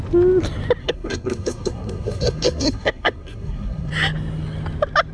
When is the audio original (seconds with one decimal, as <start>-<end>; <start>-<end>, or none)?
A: 0.0-0.8; 3.9-5.1